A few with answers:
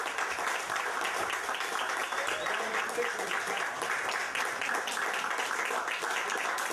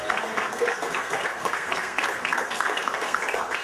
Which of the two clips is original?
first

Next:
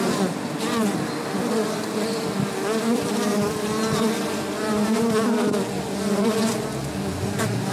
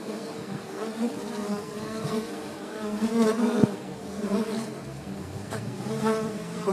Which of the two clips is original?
first